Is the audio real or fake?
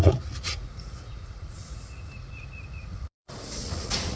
fake